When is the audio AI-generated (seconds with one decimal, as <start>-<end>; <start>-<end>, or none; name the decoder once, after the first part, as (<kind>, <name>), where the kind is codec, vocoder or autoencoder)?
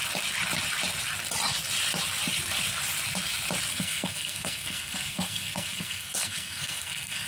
3.7-7.3 (codec, SNAC)